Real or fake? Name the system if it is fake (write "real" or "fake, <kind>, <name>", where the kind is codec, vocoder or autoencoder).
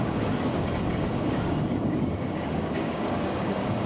fake, codec, DAC